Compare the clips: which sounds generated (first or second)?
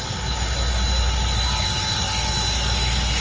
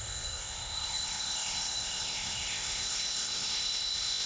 second